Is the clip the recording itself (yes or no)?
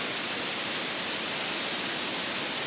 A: yes